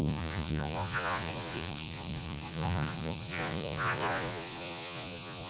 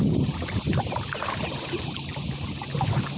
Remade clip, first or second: first